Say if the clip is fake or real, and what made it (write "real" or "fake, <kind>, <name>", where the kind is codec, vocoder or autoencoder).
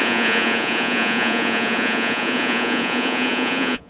fake, vocoder, Vocos